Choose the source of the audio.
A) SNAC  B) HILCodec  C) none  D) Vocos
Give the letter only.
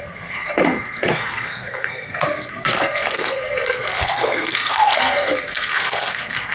A